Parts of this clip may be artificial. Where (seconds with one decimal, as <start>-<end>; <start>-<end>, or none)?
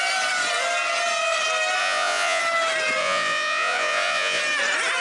1.8-2.4; 3.0-4.4